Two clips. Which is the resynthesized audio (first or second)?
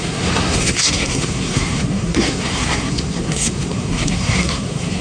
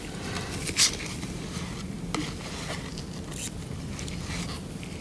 first